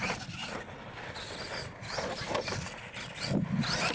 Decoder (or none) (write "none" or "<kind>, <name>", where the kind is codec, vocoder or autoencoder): none